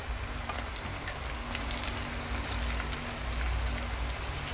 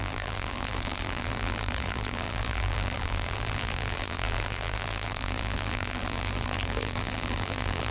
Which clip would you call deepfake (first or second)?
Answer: second